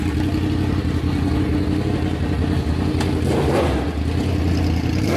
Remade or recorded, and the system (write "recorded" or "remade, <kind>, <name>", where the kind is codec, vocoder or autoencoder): recorded